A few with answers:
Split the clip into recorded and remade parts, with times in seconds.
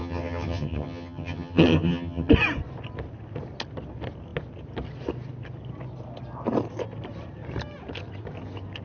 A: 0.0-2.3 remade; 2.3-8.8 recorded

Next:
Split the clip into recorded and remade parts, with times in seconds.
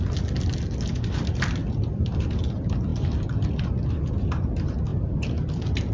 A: 0.0-5.9 recorded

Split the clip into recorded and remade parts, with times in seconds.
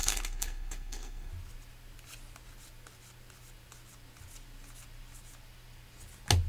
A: 0.0-1.3 remade; 1.3-6.5 recorded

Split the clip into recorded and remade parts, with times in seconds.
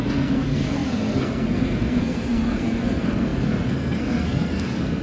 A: 0.0-5.0 remade